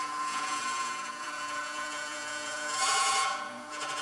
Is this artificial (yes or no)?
yes